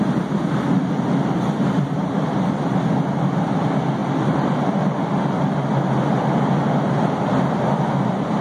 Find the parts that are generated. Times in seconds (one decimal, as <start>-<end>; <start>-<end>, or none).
4.0-4.6